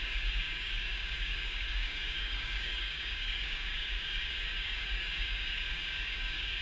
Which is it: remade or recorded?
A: remade